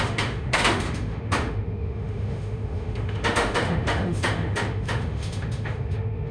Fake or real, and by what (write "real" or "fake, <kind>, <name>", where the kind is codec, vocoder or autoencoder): fake, autoencoder, DAC-VAE